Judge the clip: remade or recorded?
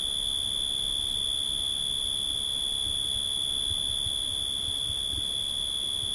recorded